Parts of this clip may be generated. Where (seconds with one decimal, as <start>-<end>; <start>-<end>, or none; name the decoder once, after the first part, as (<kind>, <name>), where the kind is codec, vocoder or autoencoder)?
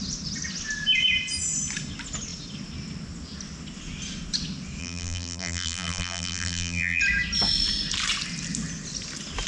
4.8-7.0 (vocoder, BigVGAN v2)